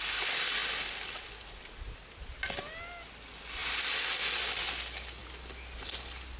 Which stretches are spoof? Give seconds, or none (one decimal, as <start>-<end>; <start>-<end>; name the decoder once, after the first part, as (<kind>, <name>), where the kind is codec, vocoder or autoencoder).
none